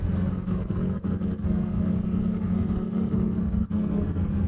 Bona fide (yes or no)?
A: no